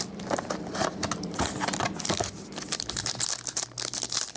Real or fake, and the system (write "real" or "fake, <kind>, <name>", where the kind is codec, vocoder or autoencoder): real